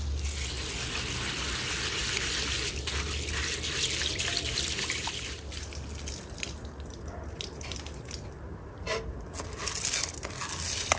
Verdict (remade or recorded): recorded